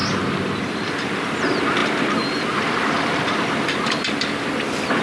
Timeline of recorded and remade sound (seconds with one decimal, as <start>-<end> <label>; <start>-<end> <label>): 0.0-5.0 recorded